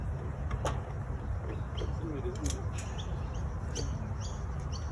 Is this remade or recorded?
recorded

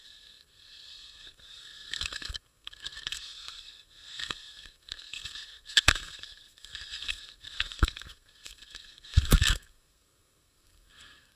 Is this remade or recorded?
remade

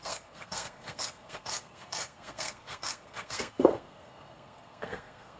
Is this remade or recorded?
remade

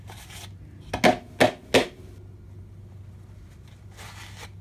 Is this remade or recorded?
recorded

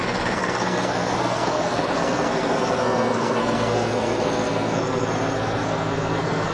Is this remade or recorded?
remade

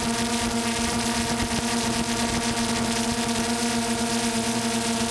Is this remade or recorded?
recorded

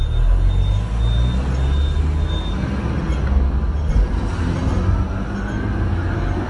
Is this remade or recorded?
recorded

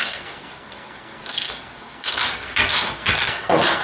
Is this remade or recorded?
remade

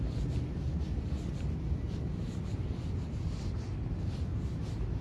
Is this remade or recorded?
recorded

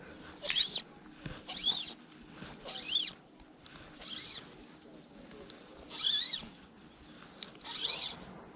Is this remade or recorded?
recorded